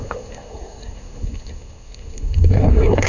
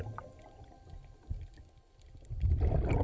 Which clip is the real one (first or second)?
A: second